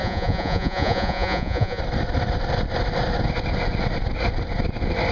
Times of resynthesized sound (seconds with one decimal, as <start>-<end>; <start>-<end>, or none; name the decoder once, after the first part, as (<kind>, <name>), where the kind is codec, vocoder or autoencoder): 0.0-1.8 (vocoder, Vocos)